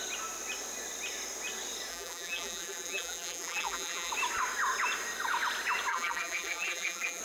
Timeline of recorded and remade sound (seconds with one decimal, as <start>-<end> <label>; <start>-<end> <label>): 0.0-1.9 recorded; 1.9-4.1 remade; 4.1-5.9 recorded; 5.9-7.2 remade